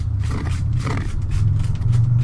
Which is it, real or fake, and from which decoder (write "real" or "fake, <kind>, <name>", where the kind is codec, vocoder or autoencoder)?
fake, vocoder, BigVGAN v2